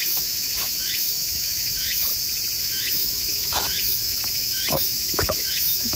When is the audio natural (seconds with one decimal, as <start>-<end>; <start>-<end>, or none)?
2.1-2.6